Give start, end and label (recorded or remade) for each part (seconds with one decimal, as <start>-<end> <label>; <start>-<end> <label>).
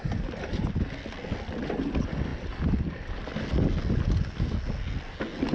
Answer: 0.0-5.5 recorded